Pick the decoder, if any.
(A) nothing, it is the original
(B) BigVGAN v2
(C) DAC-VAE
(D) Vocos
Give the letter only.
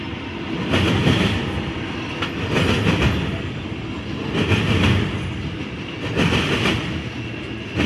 A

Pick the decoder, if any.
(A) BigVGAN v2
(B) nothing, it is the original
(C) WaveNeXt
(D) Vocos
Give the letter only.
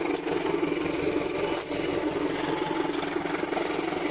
B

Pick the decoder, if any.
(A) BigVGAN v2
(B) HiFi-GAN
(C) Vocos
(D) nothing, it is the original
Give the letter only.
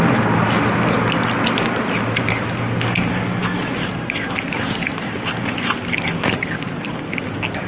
D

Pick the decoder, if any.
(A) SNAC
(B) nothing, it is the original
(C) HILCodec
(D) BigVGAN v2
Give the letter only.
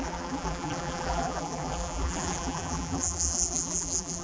D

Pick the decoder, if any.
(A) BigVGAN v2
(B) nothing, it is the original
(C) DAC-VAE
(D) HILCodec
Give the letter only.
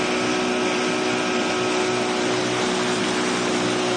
B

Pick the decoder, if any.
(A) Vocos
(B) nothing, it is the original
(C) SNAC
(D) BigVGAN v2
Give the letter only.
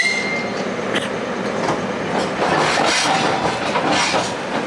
B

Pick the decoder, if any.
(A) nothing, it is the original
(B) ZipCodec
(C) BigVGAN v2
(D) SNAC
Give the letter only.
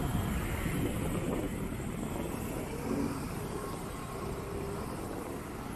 A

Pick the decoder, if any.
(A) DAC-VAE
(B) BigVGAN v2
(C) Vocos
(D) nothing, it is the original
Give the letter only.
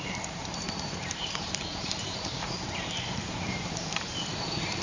B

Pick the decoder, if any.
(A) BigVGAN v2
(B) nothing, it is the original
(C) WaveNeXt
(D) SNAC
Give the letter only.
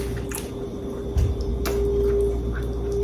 B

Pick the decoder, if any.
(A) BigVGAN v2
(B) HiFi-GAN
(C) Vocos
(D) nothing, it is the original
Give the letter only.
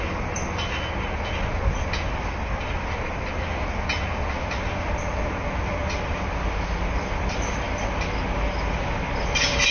D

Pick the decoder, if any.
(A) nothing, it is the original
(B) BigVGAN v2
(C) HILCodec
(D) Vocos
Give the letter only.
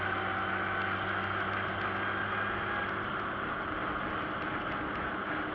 A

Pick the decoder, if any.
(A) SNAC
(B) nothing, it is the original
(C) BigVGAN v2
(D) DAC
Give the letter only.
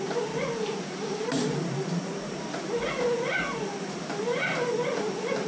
C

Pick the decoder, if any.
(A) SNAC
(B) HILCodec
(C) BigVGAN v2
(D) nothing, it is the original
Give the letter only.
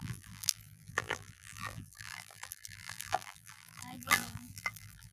C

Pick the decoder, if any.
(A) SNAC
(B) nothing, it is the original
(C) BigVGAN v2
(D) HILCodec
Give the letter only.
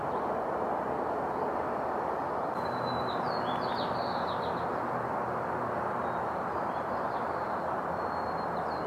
B